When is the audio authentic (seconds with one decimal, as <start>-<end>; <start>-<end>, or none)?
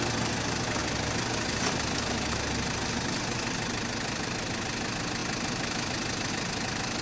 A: 0.0-7.0